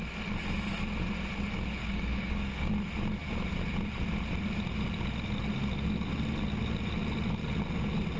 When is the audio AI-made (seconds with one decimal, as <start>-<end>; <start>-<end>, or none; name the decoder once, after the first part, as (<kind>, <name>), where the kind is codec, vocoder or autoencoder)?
1.8-2.7 (codec, DAC)